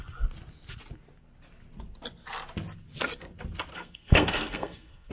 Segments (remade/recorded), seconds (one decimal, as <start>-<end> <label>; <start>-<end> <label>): 0.0-3.7 recorded; 3.7-5.1 remade